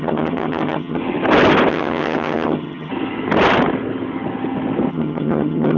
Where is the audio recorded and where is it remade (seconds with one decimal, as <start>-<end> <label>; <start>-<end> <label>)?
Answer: 0.0-1.0 remade; 1.0-1.7 recorded; 1.7-2.9 remade; 2.9-4.9 recorded; 4.9-5.8 remade